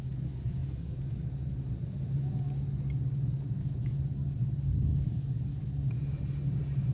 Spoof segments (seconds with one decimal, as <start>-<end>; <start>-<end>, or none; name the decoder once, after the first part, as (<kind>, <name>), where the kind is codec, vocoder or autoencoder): none